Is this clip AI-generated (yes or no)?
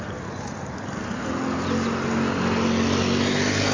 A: no